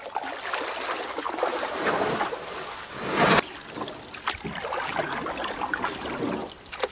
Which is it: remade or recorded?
recorded